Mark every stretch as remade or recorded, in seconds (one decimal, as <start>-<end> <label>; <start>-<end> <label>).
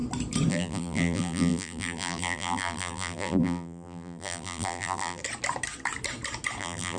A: 0.0-0.5 recorded; 0.5-5.2 remade; 5.2-6.6 recorded; 6.6-7.0 remade